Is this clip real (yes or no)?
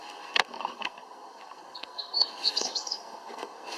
no